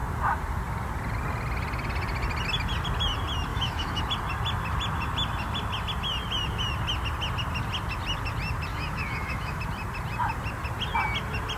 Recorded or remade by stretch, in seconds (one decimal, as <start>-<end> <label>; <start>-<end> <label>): 0.0-3.5 recorded; 3.5-4.0 remade; 4.0-8.7 recorded; 8.7-9.6 remade; 9.6-11.6 recorded